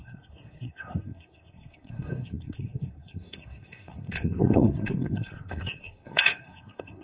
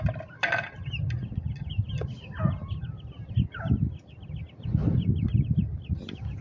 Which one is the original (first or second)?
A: second